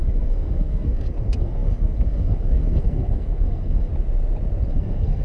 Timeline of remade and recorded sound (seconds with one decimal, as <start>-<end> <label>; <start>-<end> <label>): 0.0-3.9 remade; 3.9-4.7 recorded; 4.7-5.2 remade